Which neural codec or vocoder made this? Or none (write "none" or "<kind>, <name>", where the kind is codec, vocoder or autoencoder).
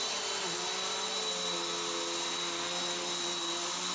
none